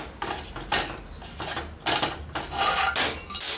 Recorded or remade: recorded